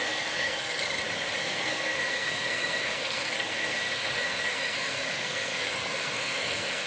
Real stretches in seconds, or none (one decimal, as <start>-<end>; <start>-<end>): 0.8-1.4